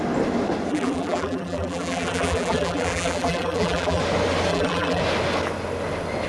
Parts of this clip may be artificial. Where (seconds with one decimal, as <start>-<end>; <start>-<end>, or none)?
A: 0.7-4.0; 4.5-5.0

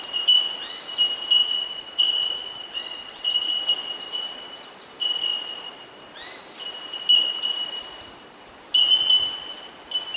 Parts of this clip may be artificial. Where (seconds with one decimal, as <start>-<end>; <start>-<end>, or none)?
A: 1.4-3.6